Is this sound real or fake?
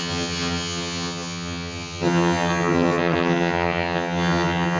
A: fake